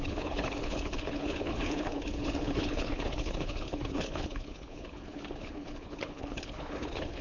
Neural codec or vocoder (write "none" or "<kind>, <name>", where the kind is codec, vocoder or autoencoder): codec, HILCodec